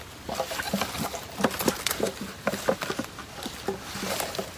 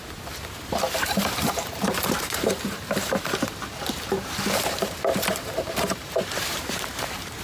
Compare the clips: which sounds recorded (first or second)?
first